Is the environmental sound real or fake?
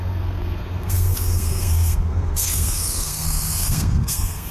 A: fake